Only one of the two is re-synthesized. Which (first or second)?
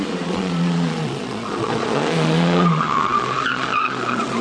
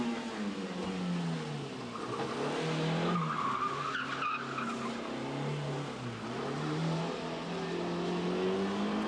first